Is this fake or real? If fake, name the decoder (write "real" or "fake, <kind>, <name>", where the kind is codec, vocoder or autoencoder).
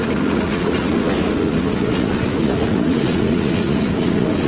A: fake, vocoder, Vocos